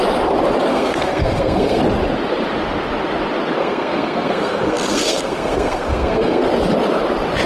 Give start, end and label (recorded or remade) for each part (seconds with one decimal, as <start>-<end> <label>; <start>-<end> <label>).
0.0-0.7 recorded; 0.7-1.8 remade; 1.8-3.6 recorded; 3.6-6.4 remade; 6.4-7.5 recorded

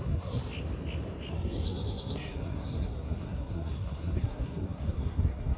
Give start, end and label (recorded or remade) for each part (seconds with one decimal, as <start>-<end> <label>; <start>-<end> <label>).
0.0-0.4 remade; 0.4-1.3 recorded; 1.3-5.6 remade

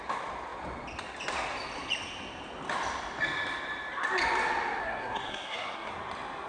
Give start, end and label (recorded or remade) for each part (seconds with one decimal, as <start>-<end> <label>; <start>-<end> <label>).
0.0-4.8 recorded; 4.8-5.9 remade; 5.9-6.5 recorded